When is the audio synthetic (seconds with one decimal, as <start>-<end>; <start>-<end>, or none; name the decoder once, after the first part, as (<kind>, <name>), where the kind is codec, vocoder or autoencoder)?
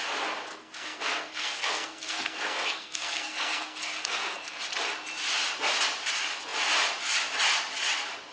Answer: 0.5-4.6 (codec, SNAC)